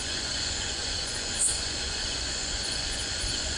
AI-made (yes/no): yes